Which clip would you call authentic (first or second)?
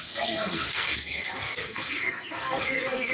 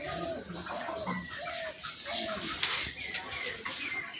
second